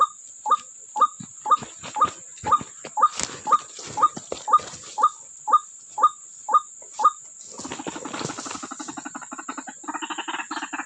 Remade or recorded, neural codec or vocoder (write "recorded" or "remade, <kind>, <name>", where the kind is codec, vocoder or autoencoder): recorded